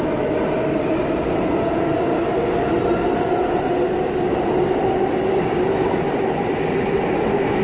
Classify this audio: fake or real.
real